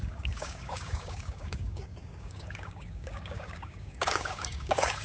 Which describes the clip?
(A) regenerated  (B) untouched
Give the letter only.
A